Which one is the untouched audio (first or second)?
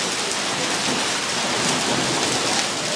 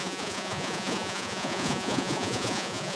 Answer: first